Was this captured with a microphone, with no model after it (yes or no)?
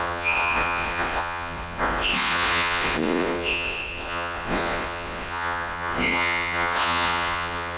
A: no